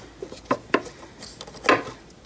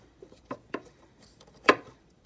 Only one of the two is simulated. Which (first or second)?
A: second